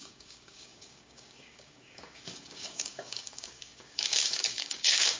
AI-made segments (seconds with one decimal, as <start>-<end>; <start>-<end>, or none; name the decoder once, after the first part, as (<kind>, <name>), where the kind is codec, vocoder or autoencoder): 0.0-5.2 (codec, DAC)

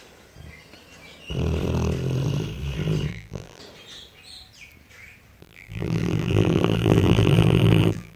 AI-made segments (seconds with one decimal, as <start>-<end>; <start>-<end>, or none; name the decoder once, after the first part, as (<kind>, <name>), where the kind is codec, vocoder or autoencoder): 3.1-3.6 (vocoder, BigVGAN v2); 5.4-8.2

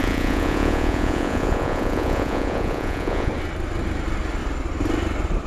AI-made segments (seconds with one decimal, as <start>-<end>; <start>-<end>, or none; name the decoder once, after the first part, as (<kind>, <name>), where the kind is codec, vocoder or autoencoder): 0.0-3.3 (vocoder, Vocos)